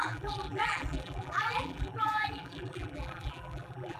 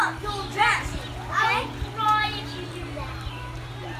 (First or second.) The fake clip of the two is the first